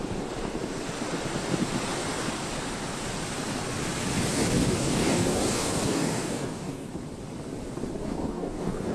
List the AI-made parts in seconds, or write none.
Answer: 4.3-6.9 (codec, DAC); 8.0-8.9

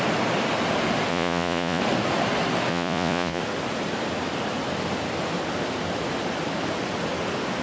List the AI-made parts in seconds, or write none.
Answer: 1.1-1.8 (vocoder, Vocos); 2.7-3.4

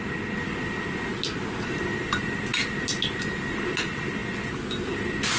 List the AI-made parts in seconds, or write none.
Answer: none

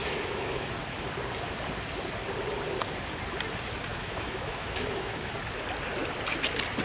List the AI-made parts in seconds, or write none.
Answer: 0.0-0.7 (autoencoder, DAC-VAE); 3.9-5.3

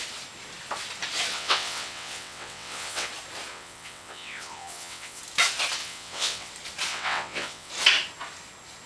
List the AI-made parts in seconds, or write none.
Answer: 1.3-3.1 (vocoder, WaveNeXt); 3.5-5.2; 5.8-6.5; 6.9-7.7

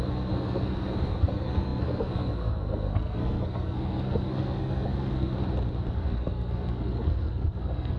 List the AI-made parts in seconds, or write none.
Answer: 0.0-5.4 (codec, SNAC); 5.9-8.0